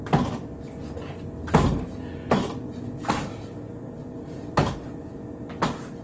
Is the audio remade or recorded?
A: recorded